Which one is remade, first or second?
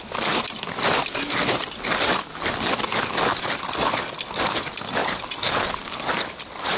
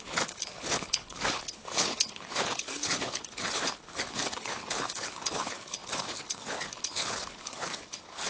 second